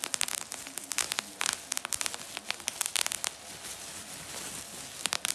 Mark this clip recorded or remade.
recorded